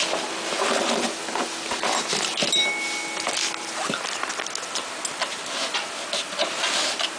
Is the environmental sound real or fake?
real